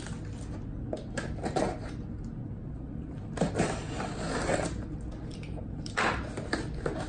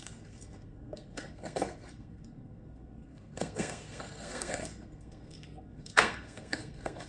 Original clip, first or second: first